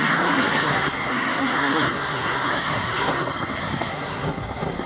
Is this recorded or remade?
remade